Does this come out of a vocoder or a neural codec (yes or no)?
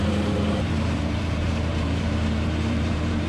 yes